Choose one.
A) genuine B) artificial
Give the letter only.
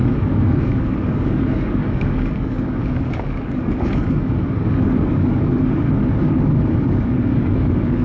B